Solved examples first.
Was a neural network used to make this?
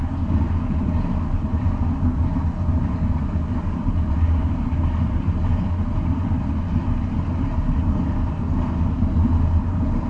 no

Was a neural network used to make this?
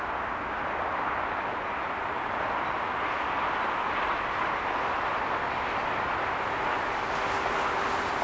no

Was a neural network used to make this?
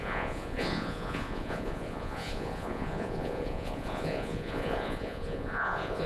yes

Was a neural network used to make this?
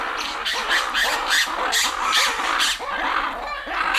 no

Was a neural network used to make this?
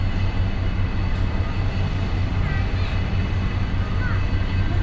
no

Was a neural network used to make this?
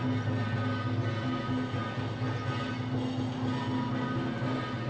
no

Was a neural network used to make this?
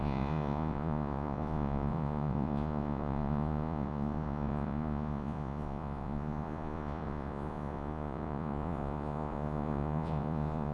yes